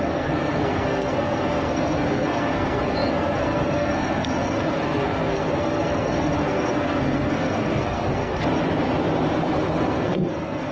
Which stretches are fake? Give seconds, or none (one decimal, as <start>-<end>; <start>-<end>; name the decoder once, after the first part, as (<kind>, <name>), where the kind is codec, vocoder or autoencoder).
0.0-8.3 (codec, SNAC); 9.4-10.7